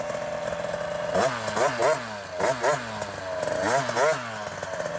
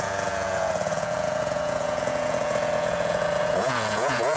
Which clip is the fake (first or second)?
second